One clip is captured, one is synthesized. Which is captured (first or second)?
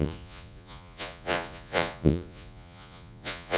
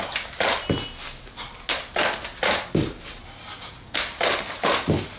second